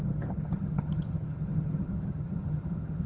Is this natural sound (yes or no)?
no